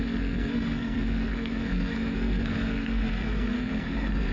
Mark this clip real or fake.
fake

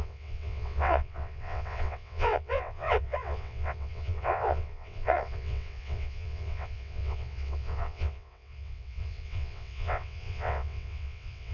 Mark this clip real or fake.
fake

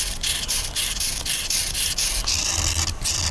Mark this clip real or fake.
real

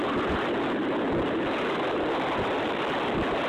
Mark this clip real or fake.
real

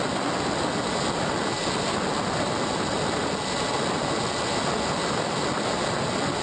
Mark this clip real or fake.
real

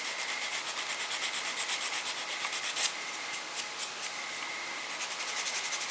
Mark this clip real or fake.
real